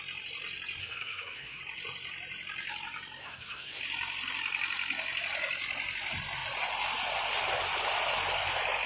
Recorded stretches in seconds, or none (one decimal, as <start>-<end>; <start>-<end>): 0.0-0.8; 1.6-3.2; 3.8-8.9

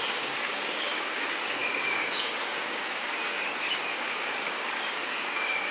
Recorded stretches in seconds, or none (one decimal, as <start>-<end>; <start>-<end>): none

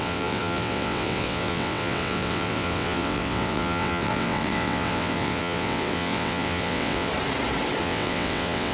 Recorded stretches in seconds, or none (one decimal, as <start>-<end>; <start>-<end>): 7.1-7.8

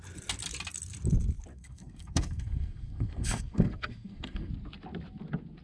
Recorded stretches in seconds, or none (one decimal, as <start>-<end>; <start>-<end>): 0.0-1.5; 4.5-5.6

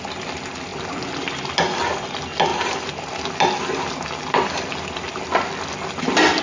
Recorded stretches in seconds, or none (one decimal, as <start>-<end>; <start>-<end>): 0.0-6.4

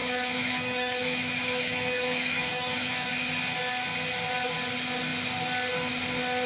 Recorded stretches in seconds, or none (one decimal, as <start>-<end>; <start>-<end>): 3.1-6.5